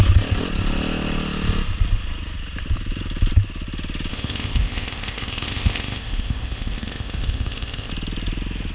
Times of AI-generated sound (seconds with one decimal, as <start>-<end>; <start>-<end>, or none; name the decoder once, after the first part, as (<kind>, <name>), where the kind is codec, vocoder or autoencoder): 4.1-7.9 (codec, ZipCodec)